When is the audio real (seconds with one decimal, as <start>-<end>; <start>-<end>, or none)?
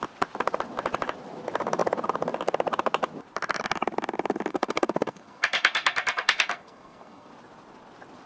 0.0-4.5; 7.3-8.3